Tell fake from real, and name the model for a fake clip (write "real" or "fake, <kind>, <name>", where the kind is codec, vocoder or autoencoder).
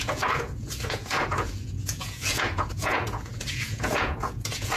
fake, vocoder, Vocos